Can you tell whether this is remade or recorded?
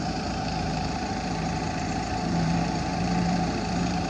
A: remade